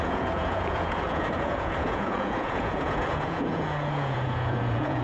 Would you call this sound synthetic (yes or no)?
yes